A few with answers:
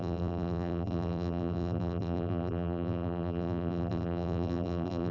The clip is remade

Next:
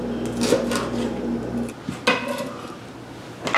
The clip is recorded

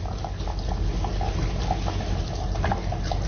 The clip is recorded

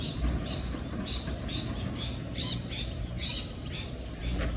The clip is remade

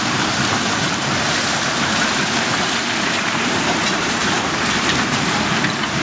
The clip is remade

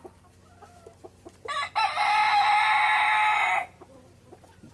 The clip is recorded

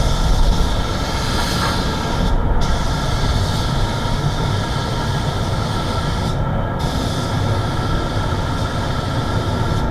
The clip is recorded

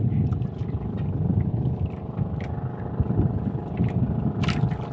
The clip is recorded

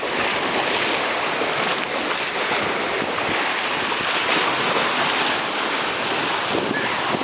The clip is recorded